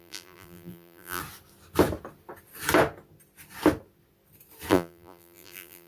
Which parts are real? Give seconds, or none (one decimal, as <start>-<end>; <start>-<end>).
1.2-4.7